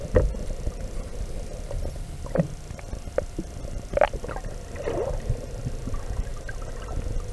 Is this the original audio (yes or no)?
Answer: yes